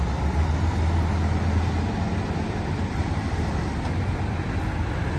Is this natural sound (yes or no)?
yes